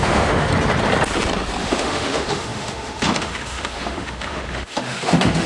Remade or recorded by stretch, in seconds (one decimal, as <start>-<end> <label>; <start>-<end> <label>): 0.0-0.5 remade; 0.5-1.6 recorded; 1.6-5.5 remade